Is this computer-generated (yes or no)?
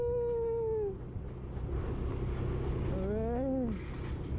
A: no